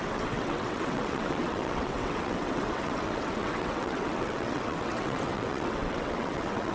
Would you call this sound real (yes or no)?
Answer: no